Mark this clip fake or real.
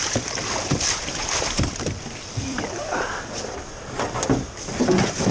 fake